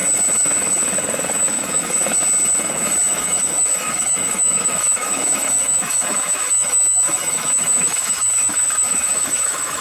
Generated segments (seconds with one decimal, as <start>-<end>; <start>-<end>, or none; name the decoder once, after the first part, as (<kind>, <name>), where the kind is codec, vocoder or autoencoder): 1.4-2.0 (autoencoder, DAC-VAE); 3.1-9.8